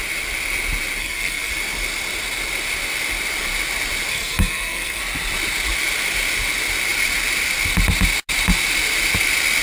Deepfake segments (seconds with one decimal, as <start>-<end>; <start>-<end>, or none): 1.0-1.5; 4.1-5.0